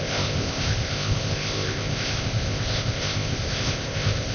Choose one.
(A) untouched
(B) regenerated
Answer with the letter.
B